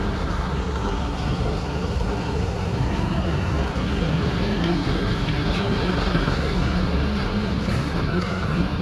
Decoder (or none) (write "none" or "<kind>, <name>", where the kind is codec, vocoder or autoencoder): codec, SNAC